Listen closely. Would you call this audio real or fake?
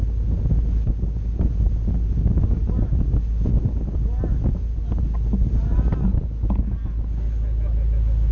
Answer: real